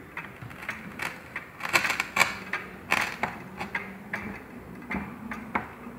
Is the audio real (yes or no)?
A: yes